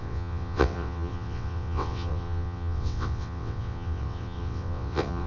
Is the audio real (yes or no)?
no